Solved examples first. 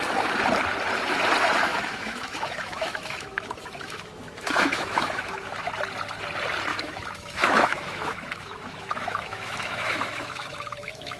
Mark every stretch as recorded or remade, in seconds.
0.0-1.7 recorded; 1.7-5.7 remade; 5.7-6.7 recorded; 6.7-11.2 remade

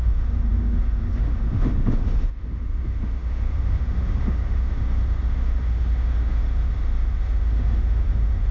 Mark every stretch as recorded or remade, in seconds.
0.0-8.5 remade

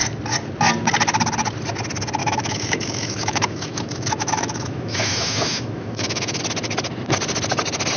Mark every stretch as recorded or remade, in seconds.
0.0-2.2 recorded; 2.2-6.4 remade; 6.4-8.0 recorded